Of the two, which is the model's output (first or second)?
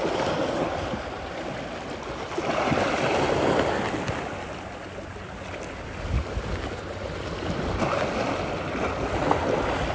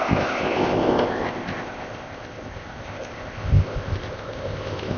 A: second